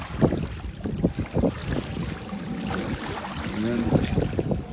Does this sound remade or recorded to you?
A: recorded